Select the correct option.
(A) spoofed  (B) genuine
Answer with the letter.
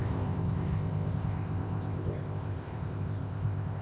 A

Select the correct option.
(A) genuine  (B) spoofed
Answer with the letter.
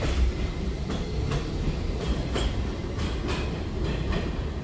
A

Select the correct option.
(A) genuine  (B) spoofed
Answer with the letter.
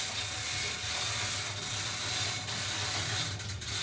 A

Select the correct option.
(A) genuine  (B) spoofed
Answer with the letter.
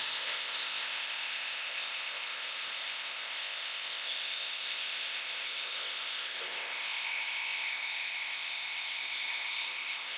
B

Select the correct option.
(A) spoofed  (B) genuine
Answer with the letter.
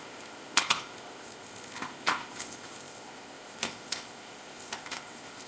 A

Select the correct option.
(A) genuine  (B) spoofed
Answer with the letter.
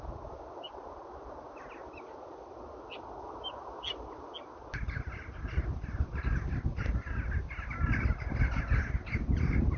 A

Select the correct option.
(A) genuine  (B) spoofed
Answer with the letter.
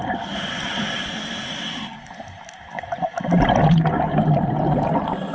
A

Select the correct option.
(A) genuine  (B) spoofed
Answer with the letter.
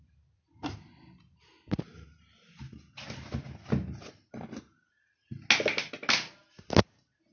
A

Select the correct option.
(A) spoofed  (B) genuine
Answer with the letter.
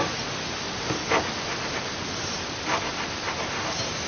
B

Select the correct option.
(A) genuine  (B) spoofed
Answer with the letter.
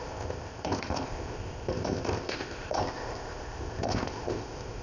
B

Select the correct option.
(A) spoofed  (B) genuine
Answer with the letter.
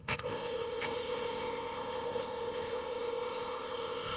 A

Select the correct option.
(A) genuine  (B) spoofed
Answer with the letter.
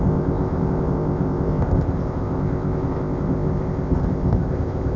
B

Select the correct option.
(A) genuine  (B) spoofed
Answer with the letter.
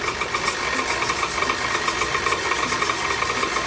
A